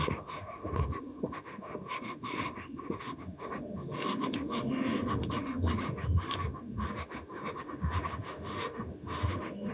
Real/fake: fake